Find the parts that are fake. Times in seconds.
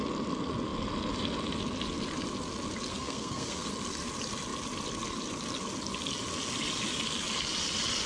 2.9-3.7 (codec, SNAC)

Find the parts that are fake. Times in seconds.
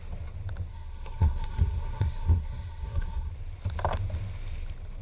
0.7-3.3 (codec, SNAC)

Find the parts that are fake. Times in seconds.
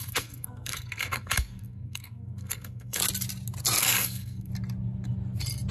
0.0-3.0 (codec, SNAC); 3.8-4.5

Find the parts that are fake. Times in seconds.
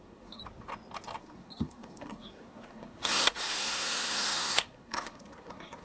0.0-0.4 (codec, SNAC); 1.2-5.8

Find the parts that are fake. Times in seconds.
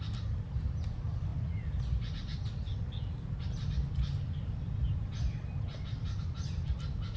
none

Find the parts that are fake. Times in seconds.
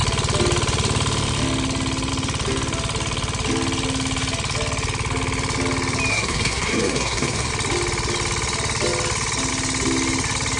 6.1-7.5 (codec, SNAC)